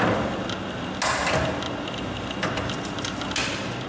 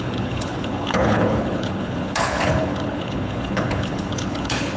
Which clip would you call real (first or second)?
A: first